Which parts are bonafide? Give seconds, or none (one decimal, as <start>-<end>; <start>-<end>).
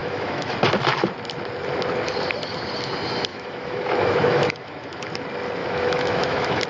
0.5-3.3; 5.1-5.6